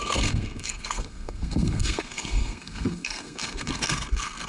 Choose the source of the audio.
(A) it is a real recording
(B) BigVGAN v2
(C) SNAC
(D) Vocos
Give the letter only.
C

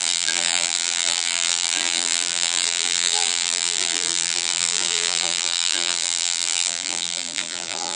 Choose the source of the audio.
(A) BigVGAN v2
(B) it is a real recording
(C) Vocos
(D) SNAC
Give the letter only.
A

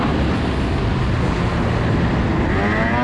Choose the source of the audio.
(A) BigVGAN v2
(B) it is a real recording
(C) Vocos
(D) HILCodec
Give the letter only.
B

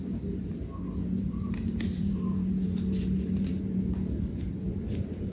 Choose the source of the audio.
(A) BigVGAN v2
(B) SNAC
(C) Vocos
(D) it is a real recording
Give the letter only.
D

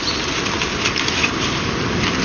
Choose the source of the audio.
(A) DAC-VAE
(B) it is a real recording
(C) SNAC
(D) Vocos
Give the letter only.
B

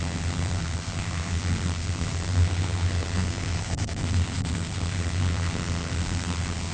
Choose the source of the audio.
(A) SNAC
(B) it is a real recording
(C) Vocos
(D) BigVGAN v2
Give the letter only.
A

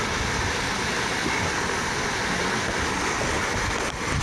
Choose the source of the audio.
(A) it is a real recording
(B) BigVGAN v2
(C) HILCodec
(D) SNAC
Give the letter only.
A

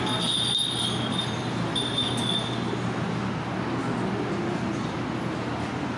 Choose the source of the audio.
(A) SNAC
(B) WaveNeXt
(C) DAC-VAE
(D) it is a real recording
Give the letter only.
D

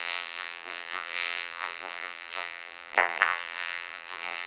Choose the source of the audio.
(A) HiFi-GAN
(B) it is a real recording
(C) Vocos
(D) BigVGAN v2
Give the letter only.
D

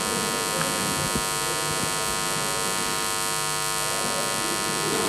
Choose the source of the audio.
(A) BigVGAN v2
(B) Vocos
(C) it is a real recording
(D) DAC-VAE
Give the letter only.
C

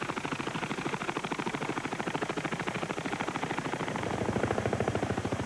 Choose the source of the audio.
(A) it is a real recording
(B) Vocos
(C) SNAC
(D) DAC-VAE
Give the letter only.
A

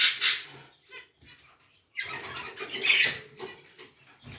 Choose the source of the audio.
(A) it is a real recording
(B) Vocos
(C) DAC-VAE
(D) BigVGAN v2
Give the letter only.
A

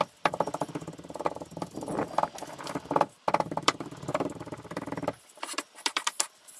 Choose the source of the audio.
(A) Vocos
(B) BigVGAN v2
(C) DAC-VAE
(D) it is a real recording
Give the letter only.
B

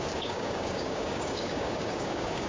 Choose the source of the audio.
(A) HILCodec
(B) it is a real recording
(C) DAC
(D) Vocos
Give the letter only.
C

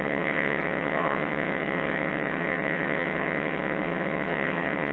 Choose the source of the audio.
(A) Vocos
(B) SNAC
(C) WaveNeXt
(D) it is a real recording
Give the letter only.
C